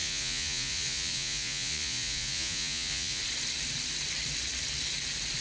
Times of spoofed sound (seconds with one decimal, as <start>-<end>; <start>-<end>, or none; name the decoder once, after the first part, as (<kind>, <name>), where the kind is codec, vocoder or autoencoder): 0.0-3.2 (vocoder, Vocos)